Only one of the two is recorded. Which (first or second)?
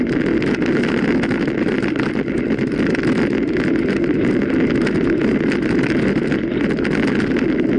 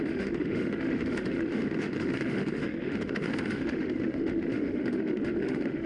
first